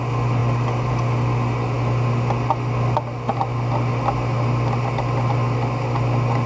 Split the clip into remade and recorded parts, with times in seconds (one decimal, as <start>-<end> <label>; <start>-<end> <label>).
0.0-6.5 recorded